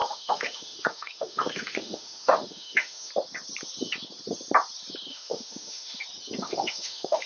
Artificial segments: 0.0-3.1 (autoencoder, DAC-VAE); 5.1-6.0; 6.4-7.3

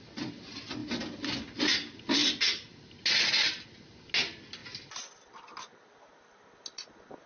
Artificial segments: none